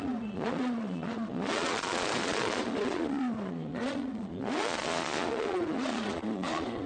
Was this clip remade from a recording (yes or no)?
yes